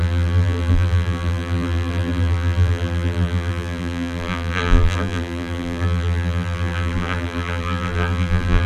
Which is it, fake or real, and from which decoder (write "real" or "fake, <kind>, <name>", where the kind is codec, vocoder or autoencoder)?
fake, vocoder, BigVGAN v2